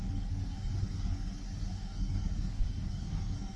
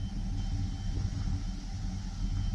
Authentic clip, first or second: second